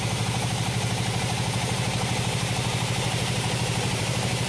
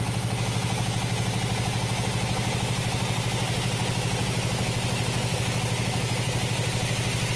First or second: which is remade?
first